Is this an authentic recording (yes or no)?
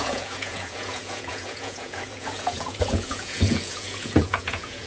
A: no